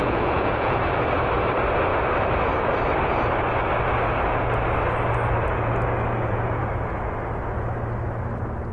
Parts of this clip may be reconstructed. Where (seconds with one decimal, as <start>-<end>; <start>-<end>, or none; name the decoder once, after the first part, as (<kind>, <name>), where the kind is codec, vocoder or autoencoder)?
0.0-1.0 (vocoder, Vocos); 6.2-6.7